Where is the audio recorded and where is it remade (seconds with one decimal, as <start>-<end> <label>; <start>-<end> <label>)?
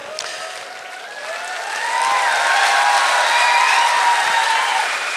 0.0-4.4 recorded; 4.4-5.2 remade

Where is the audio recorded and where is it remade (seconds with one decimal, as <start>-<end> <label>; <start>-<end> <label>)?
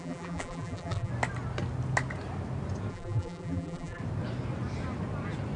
0.0-1.1 remade; 1.1-2.9 recorded; 2.9-4.0 remade; 4.0-5.6 recorded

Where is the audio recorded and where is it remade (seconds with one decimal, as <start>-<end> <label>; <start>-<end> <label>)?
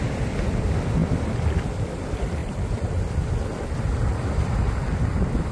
0.0-2.4 recorded; 2.4-3.0 remade; 3.0-5.5 recorded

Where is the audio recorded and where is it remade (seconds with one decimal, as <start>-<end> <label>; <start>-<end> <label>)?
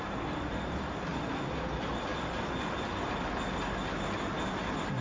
0.0-1.1 remade; 1.1-1.7 recorded; 1.7-2.1 remade; 2.1-4.4 recorded; 4.4-5.0 remade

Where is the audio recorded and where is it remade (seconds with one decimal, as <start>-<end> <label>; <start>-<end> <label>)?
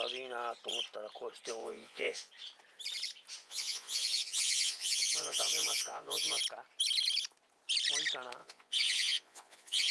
0.0-1.6 recorded; 1.6-2.3 remade; 2.3-3.4 recorded; 3.4-6.4 remade; 6.4-8.4 recorded; 8.4-9.9 remade